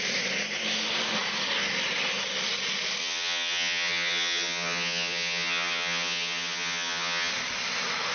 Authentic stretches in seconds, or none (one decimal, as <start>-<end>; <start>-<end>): 0.0-3.0; 7.3-8.1